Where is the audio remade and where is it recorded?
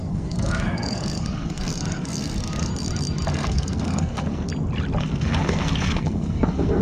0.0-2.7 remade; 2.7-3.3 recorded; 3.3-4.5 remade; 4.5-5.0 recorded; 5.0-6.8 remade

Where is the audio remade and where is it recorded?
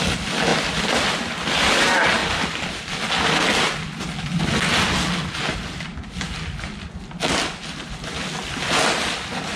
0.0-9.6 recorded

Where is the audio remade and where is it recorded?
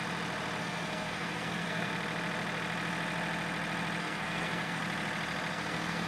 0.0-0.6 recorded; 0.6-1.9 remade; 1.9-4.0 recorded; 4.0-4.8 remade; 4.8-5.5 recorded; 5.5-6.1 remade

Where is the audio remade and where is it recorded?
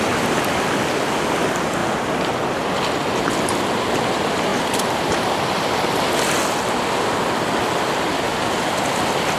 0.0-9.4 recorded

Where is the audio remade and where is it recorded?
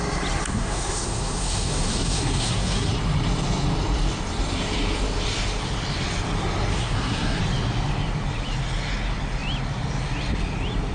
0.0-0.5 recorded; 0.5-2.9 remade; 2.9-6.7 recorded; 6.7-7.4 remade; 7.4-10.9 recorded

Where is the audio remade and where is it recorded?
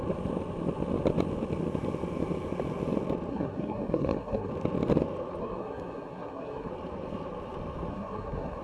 0.0-3.3 recorded; 3.3-4.5 remade; 4.5-5.4 recorded; 5.4-6.7 remade; 6.7-7.9 recorded; 7.9-8.6 remade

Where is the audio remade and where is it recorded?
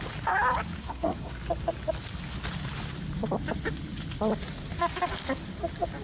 0.0-0.8 recorded; 0.8-1.4 remade; 1.4-6.0 recorded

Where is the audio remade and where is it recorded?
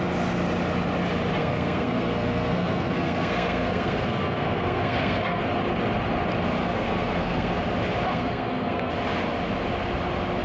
0.0-1.4 recorded; 1.4-5.4 remade; 5.4-6.6 recorded; 6.6-7.6 remade; 7.6-8.1 recorded; 8.1-8.9 remade; 8.9-10.4 recorded